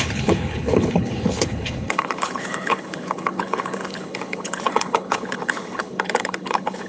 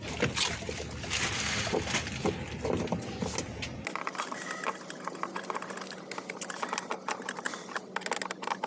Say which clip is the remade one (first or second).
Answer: first